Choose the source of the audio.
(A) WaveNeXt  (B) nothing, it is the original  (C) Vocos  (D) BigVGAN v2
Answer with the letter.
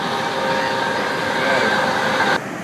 B